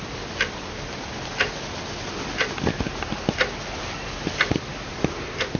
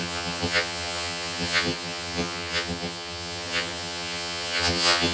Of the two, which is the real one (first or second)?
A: first